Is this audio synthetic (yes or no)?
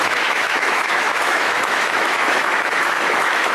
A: yes